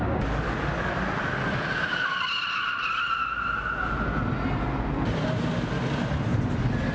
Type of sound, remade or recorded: recorded